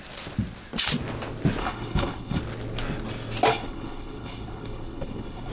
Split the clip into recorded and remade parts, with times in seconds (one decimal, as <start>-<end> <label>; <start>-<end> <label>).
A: 0.0-1.6 recorded; 1.6-2.4 remade; 2.4-3.5 recorded; 3.5-5.5 remade

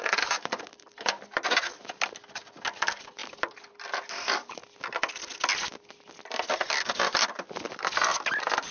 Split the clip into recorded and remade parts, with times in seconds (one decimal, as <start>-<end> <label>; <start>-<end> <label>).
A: 0.0-8.7 recorded

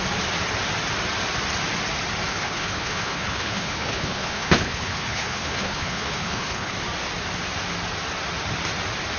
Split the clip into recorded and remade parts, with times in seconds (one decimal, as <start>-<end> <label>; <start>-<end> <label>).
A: 0.0-2.3 recorded; 2.3-6.7 remade; 6.7-9.2 recorded

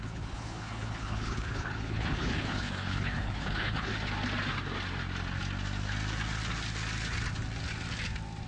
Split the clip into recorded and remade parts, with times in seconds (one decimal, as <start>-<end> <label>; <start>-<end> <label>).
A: 0.0-3.9 remade; 3.9-8.5 recorded